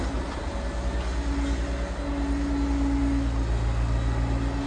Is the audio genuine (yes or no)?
yes